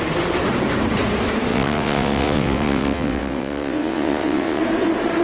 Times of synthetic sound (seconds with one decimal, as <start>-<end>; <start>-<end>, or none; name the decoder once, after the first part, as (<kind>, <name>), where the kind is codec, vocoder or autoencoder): 1.5-4.6 (vocoder, WaveNeXt)